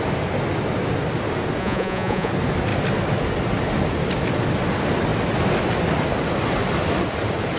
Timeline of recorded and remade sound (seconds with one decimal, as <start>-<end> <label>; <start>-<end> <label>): 0.0-1.6 recorded; 1.6-2.3 remade; 2.3-7.6 recorded